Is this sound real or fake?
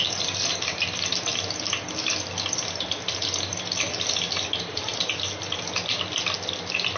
real